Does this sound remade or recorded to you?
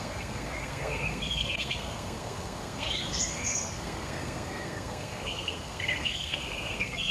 remade